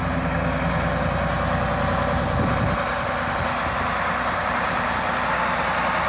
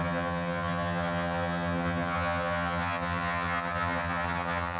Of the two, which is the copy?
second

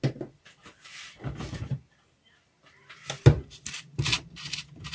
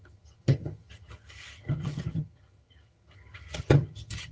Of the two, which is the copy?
second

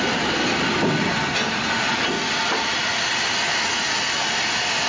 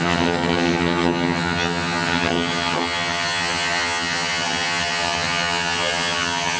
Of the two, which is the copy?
second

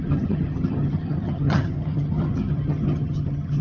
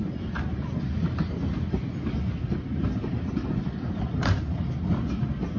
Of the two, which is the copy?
first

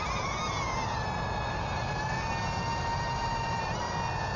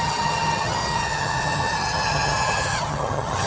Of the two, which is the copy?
second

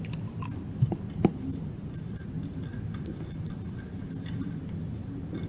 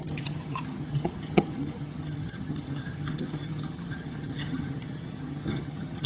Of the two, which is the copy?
second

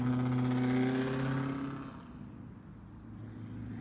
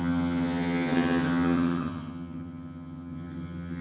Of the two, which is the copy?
second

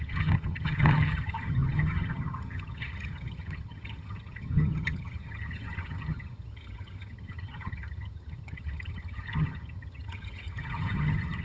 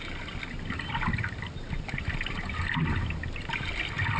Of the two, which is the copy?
first